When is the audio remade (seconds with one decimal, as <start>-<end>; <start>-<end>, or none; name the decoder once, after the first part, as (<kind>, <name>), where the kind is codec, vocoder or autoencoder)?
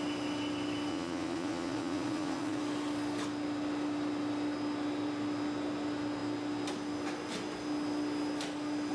0.9-2.6 (vocoder, Vocos)